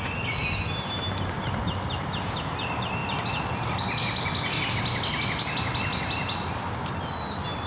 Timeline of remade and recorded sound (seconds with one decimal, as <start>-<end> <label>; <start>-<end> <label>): 0.0-7.7 recorded